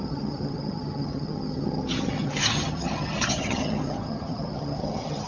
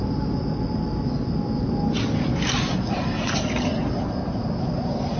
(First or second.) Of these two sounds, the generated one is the first